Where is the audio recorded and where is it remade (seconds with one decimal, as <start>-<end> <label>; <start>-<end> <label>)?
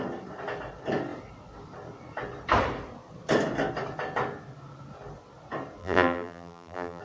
0.0-5.8 recorded; 5.8-7.0 remade